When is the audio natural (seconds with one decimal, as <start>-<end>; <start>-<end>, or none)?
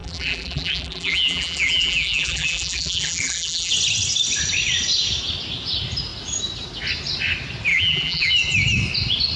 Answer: 3.7-7.7; 8.3-9.4